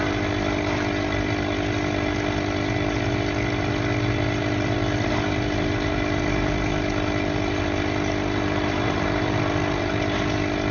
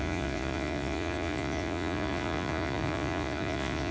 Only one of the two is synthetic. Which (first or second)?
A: second